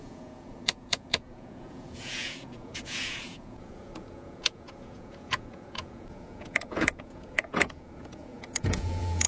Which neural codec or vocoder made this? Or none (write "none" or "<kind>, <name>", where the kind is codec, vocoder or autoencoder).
vocoder, Vocos